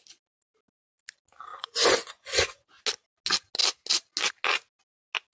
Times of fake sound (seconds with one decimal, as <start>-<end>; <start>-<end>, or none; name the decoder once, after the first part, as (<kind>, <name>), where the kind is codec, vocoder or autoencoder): 1.5-2.8 (vocoder, Vocos)